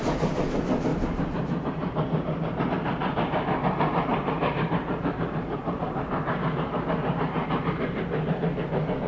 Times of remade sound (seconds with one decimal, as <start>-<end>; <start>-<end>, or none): 0.9-2.7; 4.1-8.7